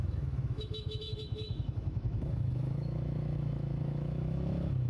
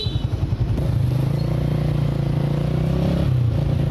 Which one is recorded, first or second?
second